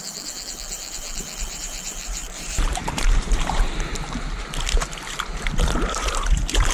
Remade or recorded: remade